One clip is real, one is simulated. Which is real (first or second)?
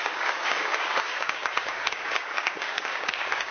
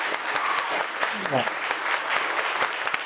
second